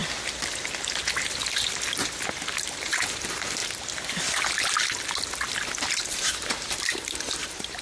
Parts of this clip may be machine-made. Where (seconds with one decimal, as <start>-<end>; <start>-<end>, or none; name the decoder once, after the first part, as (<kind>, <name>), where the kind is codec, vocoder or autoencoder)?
2.3-3.6 (vocoder, BigVGAN v2); 5.9-7.8